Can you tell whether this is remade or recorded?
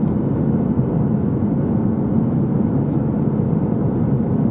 recorded